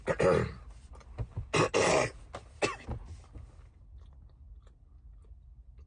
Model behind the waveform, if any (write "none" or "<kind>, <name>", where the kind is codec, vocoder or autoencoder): none